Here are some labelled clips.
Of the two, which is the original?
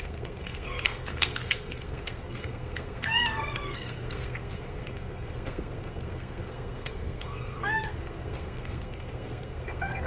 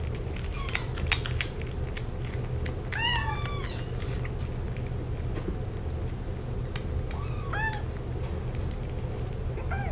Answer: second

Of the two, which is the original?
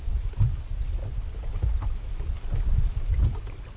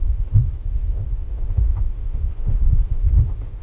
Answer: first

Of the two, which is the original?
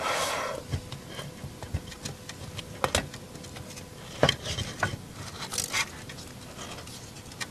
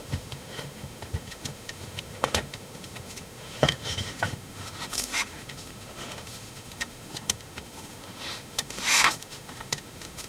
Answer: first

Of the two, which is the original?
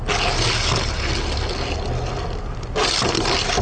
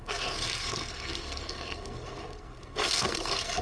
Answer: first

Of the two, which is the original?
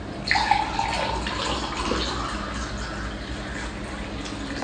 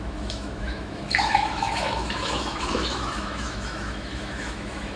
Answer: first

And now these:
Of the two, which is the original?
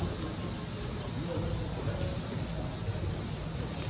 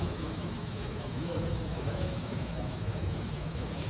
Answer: first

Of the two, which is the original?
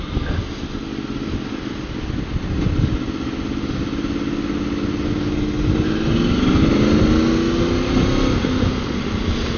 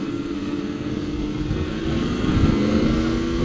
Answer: first